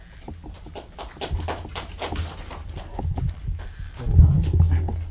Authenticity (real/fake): real